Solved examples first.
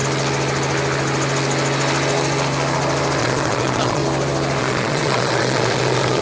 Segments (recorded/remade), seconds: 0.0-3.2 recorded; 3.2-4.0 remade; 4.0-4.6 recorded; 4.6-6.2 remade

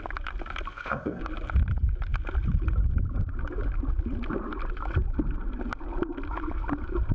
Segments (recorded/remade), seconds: 0.0-0.7 recorded; 0.7-1.2 remade; 1.2-7.1 recorded

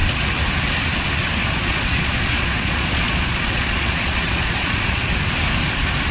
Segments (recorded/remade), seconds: 0.0-1.4 recorded; 1.4-5.1 remade; 5.1-6.1 recorded

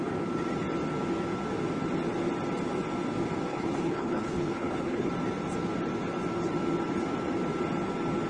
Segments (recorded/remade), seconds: 0.0-3.5 recorded; 3.5-5.1 remade; 5.1-8.3 recorded

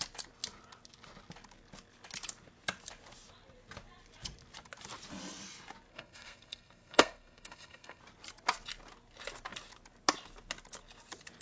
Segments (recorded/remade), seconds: 0.0-5.9 recorded; 5.9-8.0 remade; 8.0-11.4 recorded

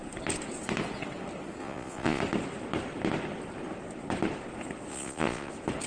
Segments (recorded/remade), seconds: 0.0-1.6 recorded; 1.6-2.2 remade; 2.2-4.9 recorded; 4.9-5.5 remade; 5.5-5.9 recorded